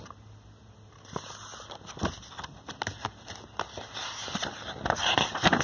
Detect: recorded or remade recorded